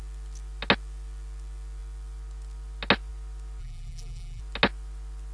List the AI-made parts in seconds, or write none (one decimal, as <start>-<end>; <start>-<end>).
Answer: 3.6-4.4